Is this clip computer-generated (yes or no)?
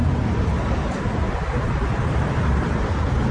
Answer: yes